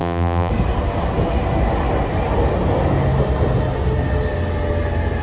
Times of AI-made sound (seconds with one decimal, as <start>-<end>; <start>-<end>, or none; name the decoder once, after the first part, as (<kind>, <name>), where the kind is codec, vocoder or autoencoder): 0.0-0.5 (vocoder, BigVGAN v2)